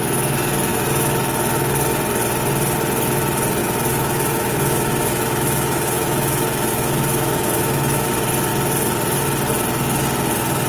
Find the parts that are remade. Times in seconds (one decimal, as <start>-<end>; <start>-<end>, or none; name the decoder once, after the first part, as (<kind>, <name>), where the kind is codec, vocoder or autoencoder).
0.7-1.2 (autoencoder, DAC-VAE); 3.6-8.1